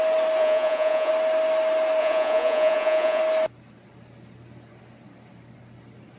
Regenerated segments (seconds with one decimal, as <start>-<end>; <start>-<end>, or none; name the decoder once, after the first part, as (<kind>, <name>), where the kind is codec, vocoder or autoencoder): 0.4-1.1 (vocoder, Vocos); 2.0-3.2